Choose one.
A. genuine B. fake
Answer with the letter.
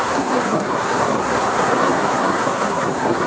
B